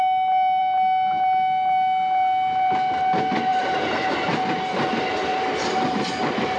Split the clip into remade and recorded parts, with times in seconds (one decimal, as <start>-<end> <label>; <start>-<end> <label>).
0.0-3.5 recorded; 3.5-4.2 remade; 4.2-5.3 recorded; 5.3-6.1 remade; 6.1-6.6 recorded